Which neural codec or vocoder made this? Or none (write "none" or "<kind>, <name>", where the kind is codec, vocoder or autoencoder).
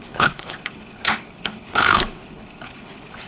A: codec, HILCodec